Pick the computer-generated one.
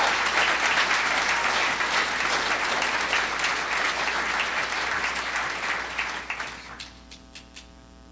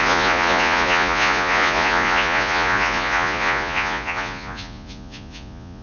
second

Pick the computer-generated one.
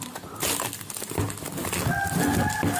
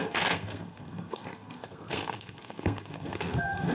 second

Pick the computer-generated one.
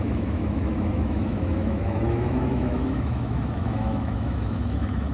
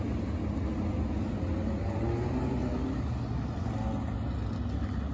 first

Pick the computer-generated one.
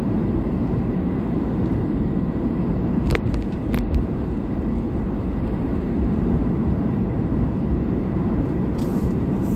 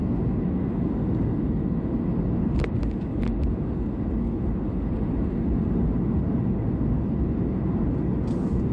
first